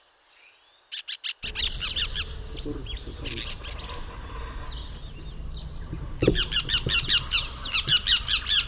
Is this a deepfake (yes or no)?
no